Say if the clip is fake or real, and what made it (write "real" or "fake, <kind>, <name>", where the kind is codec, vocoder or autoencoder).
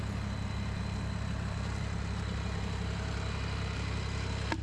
real